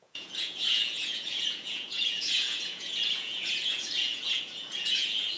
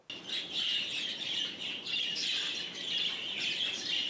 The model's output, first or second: first